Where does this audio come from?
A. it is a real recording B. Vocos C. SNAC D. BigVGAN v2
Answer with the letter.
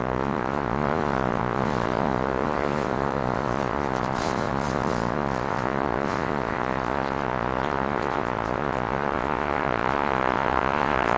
B